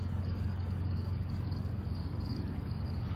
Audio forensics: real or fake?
fake